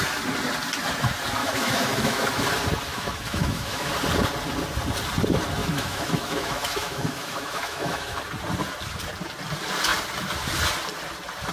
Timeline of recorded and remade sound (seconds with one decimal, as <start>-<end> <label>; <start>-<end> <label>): 0.0-1.4 recorded; 1.4-2.3 remade; 2.3-2.9 recorded; 2.9-3.9 remade; 3.9-5.6 recorded; 5.6-8.2 remade; 8.2-11.5 recorded